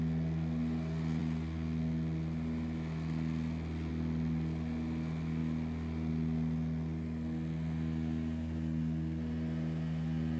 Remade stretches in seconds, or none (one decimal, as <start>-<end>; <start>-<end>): none